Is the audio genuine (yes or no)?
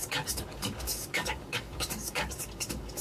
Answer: no